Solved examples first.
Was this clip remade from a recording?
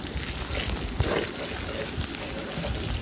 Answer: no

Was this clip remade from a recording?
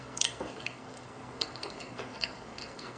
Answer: yes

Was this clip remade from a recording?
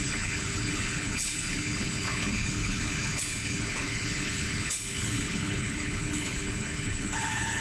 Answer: yes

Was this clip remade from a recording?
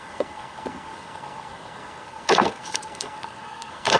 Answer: yes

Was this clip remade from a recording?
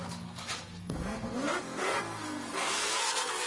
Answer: yes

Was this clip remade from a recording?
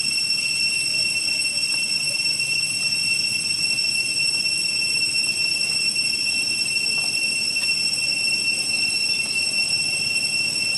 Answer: no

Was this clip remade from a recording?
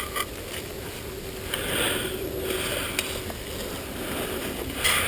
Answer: no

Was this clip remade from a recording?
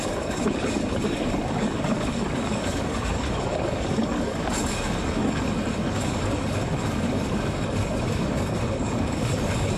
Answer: yes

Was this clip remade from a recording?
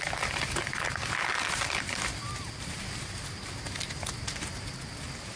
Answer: no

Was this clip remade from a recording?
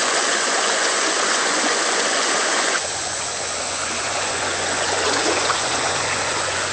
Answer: yes